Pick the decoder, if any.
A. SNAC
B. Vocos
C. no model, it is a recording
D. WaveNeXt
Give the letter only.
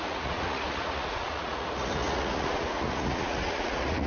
B